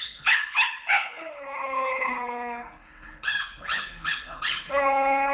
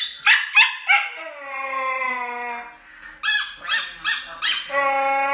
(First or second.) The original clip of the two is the second